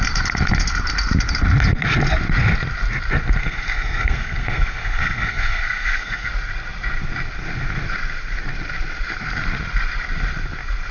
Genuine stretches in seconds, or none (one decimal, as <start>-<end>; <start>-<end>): 0.0-3.4; 6.3-10.9